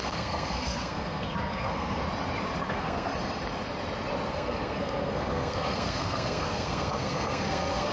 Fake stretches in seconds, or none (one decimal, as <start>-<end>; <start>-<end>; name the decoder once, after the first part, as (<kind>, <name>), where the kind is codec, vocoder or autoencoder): 0.0-2.0 (codec, SNAC); 2.6-3.1; 4.3-7.9